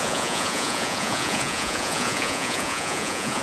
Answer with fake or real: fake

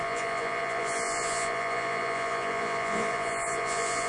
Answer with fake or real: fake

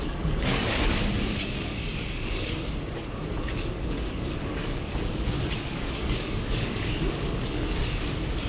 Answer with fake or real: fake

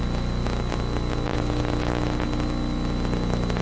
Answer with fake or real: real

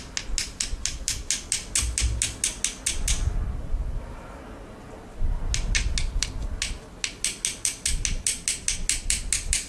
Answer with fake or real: real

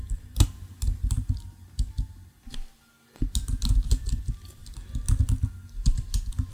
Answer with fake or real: real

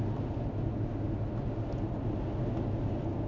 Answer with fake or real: real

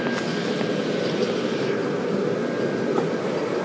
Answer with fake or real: real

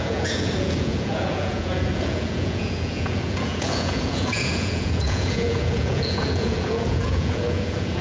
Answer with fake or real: fake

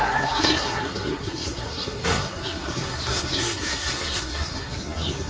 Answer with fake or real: fake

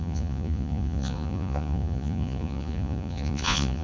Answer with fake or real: fake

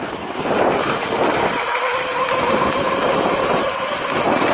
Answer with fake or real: fake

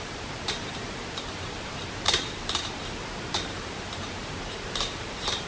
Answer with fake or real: fake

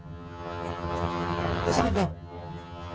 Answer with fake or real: fake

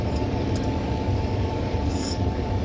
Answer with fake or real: fake